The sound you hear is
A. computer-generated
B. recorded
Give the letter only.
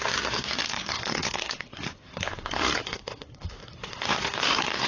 A